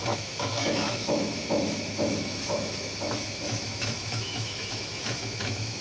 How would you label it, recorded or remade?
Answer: remade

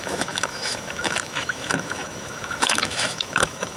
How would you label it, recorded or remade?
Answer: remade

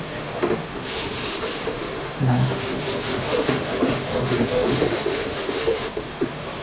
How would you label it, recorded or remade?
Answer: remade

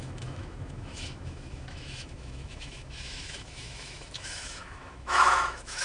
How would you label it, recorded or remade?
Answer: remade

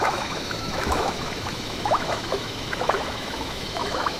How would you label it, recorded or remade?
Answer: remade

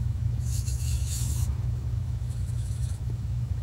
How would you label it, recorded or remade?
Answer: remade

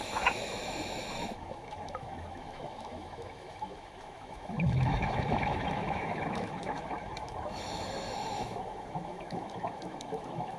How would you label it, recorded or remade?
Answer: remade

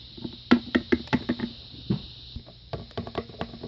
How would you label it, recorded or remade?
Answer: recorded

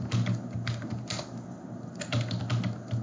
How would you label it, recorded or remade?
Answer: recorded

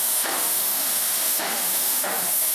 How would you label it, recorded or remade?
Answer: remade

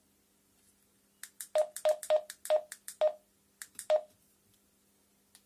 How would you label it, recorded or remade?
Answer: recorded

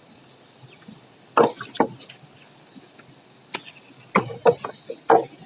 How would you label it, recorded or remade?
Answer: recorded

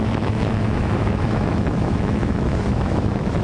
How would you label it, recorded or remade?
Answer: remade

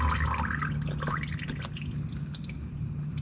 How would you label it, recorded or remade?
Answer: recorded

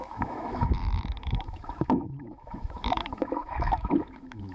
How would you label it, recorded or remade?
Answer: remade